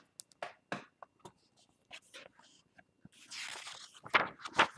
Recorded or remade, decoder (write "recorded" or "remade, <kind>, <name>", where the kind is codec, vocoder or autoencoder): recorded